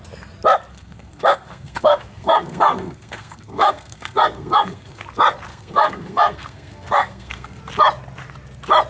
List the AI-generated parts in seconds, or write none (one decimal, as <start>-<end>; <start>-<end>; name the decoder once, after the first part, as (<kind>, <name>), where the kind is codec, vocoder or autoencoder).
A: 0.7-5.0 (codec, SNAC); 5.5-7.6

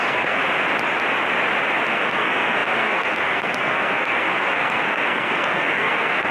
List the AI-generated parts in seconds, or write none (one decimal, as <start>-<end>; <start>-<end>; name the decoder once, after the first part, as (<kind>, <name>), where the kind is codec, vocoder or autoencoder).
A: 0.0-0.4 (codec, SNAC); 1.9-6.3

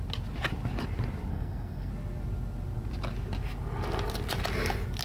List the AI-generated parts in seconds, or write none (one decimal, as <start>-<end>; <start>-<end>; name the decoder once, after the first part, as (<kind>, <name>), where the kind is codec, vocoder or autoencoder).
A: 1.3-1.9 (codec, SNAC)

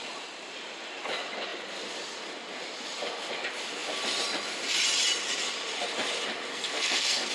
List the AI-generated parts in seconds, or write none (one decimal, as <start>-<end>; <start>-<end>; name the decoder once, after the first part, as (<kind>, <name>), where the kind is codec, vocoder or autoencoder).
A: 6.5-7.3 (codec, SNAC)

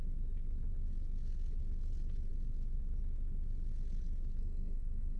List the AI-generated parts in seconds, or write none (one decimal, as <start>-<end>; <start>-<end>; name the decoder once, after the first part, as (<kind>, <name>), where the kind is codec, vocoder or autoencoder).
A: 4.4-5.2 (codec, SNAC)

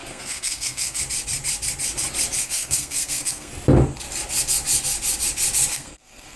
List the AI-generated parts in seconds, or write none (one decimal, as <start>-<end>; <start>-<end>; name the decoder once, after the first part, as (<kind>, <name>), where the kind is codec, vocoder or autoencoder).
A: 0.0-1.0 (codec, SNAC); 2.4-3.5; 5.7-6.4